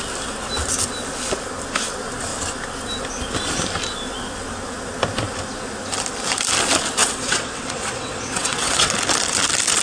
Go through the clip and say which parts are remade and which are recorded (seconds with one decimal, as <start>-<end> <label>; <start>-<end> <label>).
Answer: 0.0-7.0 recorded; 7.0-8.9 remade; 8.9-9.8 recorded